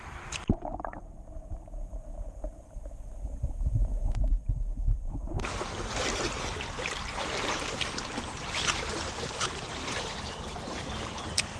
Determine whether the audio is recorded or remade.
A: remade